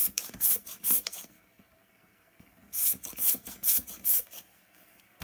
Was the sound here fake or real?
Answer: fake